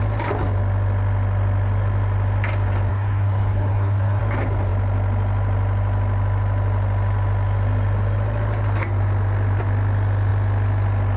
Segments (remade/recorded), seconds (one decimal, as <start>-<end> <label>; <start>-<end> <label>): 0.0-2.9 recorded; 2.9-4.2 remade; 4.2-11.2 recorded